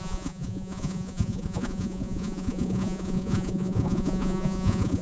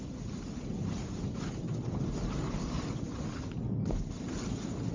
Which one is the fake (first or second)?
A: first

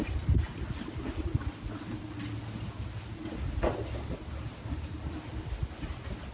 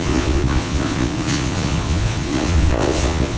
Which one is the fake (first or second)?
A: second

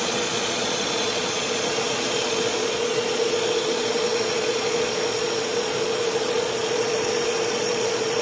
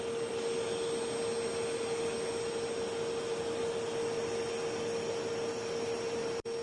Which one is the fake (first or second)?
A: first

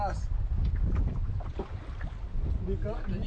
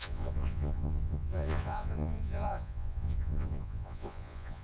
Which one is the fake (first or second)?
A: second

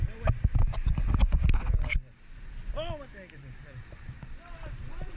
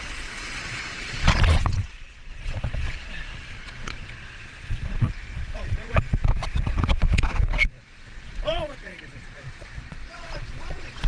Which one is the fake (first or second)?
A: second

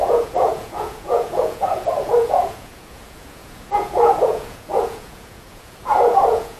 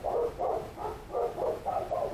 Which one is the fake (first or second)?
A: first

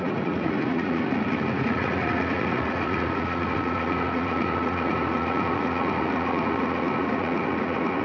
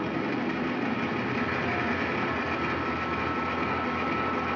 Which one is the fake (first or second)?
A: first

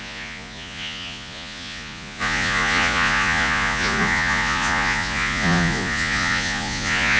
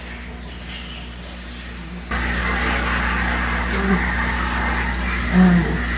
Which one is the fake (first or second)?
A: first